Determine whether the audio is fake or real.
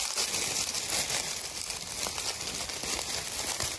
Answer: real